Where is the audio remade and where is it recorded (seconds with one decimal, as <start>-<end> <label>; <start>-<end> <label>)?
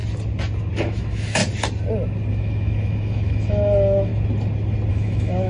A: 0.0-0.8 recorded; 0.8-1.4 remade; 1.4-2.3 recorded; 2.3-4.1 remade; 4.1-4.9 recorded; 4.9-5.5 remade